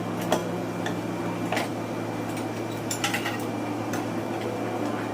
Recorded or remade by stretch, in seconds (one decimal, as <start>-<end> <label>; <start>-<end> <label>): 0.0-5.1 recorded